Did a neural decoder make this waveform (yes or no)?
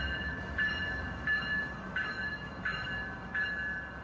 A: yes